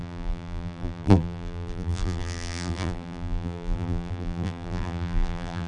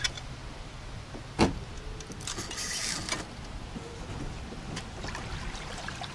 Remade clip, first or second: first